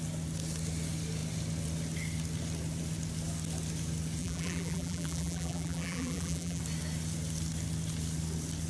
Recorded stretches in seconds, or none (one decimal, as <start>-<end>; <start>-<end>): 0.0-4.2; 6.6-8.7